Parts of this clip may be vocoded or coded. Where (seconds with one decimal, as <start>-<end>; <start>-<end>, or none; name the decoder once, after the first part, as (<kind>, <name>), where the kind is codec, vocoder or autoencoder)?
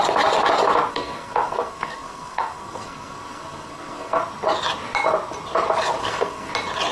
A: 0.9-4.2 (codec, SNAC); 6.0-6.5